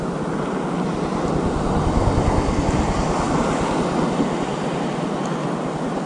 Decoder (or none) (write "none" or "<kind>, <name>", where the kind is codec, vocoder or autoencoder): none